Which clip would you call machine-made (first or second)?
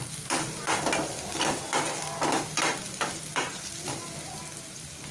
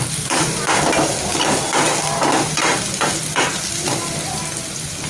second